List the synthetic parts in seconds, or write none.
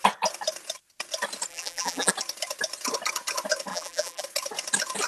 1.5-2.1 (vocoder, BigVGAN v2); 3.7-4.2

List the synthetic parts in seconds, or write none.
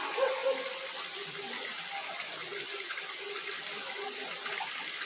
none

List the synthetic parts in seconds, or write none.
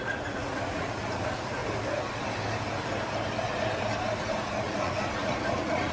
0.0-1.6 (vocoder, Vocos); 4.3-5.9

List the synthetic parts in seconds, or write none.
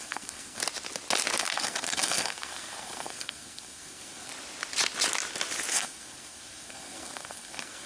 0.0-0.6 (codec, SNAC); 1.4-4.3; 5.7-7.9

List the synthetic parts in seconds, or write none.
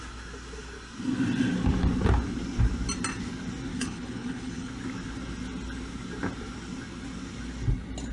3.7-4.7 (codec, HILCodec)